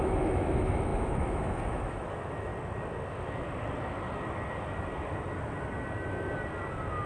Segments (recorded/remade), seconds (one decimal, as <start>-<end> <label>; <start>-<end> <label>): 0.0-2.5 remade; 2.5-7.1 recorded